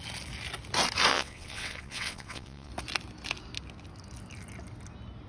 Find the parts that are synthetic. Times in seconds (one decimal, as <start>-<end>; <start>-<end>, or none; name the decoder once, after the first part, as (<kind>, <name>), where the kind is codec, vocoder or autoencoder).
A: 1.1-2.7 (vocoder, WaveNeXt)